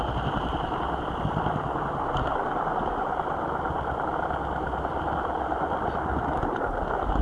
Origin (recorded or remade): recorded